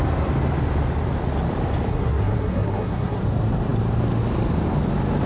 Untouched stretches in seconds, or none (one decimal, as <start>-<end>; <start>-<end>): 0.0-1.9; 3.2-5.3